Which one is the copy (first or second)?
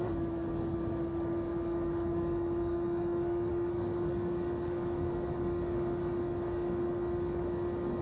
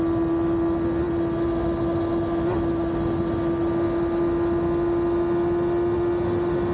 first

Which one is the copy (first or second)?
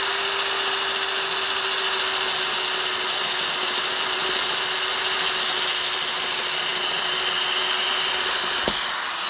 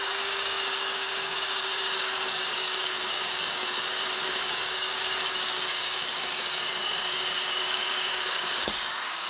second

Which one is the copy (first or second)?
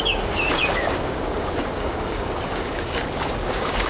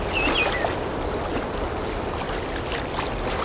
first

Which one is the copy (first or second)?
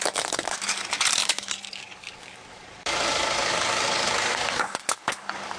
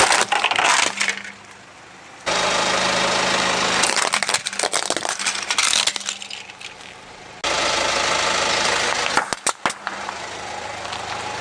first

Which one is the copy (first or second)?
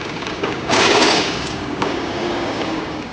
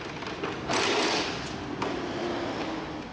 first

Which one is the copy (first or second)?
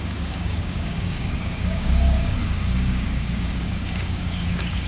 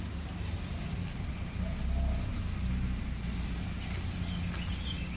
first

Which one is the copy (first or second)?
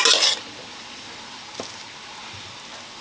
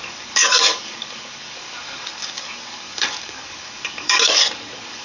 second